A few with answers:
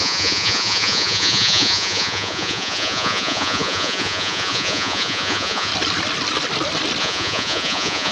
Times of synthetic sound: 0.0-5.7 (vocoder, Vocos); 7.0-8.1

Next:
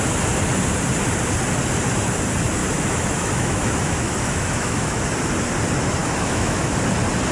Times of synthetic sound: 2.6-5.0 (autoencoder, DAC-VAE); 6.0-6.7

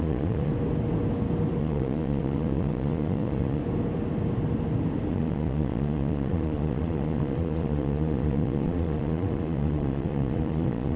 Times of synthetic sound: 0.0-0.5 (vocoder, Vocos); 1.6-3.6; 5.1-11.0

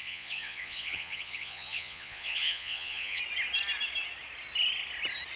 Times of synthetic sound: 0.0-3.2 (vocoder, Vocos)

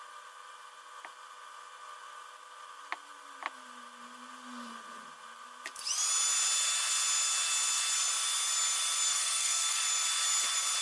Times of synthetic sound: 9.1-9.8 (codec, SNAC)